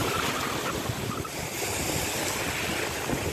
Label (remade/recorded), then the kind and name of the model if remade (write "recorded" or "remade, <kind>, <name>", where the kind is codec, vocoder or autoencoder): recorded